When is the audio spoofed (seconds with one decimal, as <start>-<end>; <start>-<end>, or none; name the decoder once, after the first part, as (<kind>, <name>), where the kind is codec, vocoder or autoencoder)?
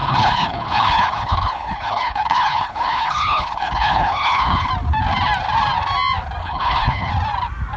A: 0.0-4.7 (codec, HILCodec); 6.4-7.1